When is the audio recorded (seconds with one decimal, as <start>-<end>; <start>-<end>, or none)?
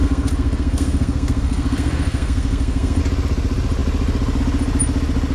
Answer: 3.0-5.3